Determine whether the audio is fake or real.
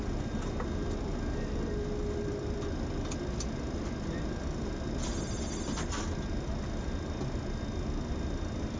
real